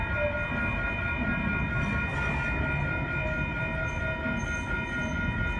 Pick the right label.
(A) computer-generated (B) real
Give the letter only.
B